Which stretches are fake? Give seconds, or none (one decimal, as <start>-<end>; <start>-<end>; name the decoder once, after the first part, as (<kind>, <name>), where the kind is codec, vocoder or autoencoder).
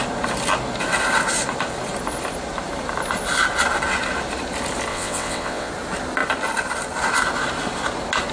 4.9-5.7 (vocoder, WaveNeXt)